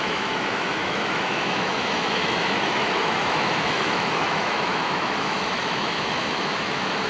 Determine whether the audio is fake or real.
fake